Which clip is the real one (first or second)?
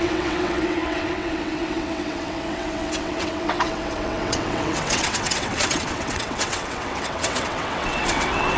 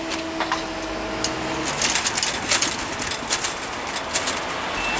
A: second